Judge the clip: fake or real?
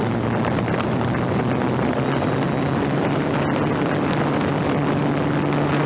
real